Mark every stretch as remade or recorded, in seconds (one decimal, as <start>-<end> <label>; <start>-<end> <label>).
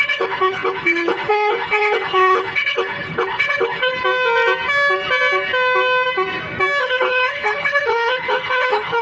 0.0-3.9 remade; 3.9-6.8 recorded; 6.8-9.0 remade